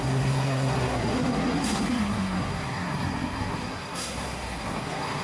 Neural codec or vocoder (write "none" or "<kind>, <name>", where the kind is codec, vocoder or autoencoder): codec, SNAC